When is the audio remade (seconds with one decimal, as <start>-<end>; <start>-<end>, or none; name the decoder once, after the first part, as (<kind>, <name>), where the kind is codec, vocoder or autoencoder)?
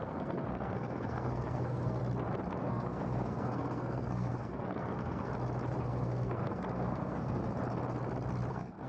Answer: 0.0-2.0 (codec, SNAC); 2.6-5.3; 5.8-7.4; 8.5-8.9